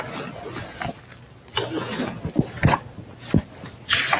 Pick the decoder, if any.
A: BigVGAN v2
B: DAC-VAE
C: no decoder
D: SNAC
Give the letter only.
C